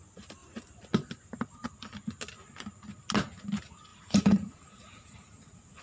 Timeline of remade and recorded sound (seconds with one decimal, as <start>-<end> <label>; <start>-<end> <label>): 0.0-3.9 recorded; 3.9-5.8 remade